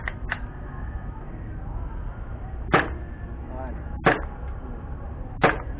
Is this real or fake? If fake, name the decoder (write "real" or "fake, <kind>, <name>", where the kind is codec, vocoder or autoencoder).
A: real